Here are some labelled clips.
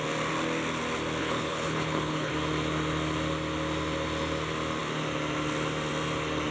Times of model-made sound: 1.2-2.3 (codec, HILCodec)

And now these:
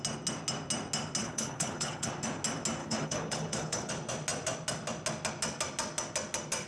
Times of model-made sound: 1.2-2.1 (codec, HILCodec); 2.8-3.9